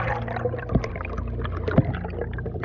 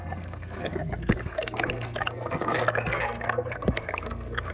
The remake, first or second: second